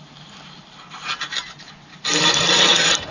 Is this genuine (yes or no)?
yes